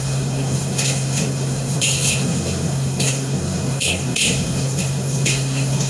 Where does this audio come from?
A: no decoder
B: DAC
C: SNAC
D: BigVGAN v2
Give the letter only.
C